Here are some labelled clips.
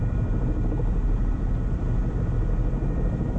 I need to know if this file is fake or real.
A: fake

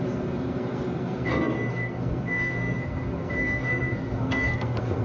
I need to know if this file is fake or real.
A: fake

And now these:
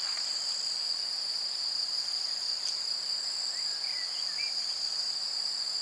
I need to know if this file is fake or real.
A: real